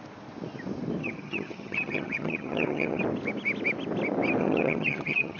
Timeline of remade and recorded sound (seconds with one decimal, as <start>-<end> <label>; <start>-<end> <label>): 0.0-1.0 recorded; 1.0-3.0 remade; 3.0-4.4 recorded; 4.4-5.4 remade